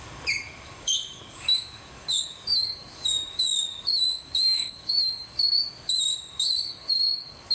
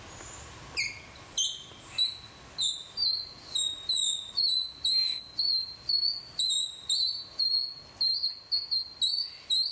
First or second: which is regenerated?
first